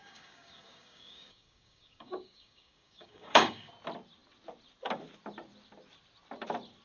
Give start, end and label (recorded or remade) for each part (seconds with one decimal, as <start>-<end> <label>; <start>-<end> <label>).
0.0-3.7 remade; 3.7-6.8 recorded